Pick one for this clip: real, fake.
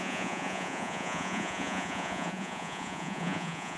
fake